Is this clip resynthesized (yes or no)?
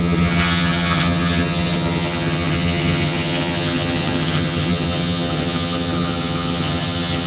yes